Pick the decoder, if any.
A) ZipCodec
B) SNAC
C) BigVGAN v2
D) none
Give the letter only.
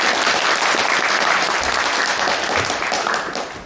D